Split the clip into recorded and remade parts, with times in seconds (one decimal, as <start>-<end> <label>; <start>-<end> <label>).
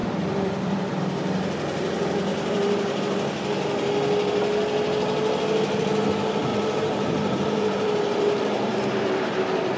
0.0-0.9 remade; 0.9-2.3 recorded; 2.3-3.0 remade; 3.0-6.5 recorded; 6.5-9.4 remade; 9.4-9.8 recorded